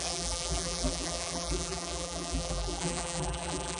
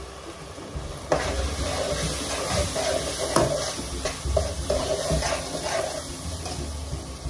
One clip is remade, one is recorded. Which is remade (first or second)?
first